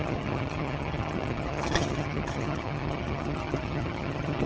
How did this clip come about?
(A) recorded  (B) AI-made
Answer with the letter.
B